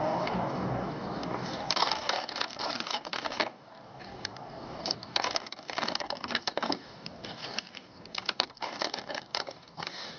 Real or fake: fake